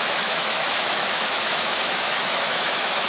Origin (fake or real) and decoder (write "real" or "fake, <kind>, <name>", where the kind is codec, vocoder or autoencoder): fake, autoencoder, DAC-VAE